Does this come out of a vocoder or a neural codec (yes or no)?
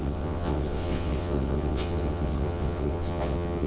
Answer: yes